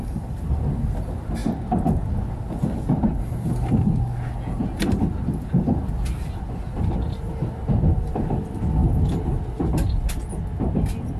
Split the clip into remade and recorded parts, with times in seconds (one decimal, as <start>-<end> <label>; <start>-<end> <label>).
0.0-11.2 recorded